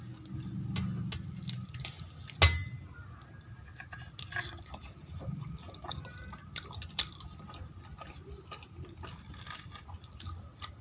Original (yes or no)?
yes